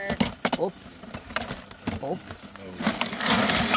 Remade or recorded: recorded